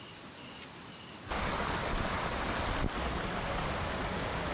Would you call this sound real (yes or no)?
yes